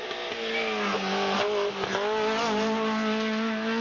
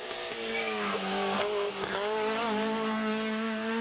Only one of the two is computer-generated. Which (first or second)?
second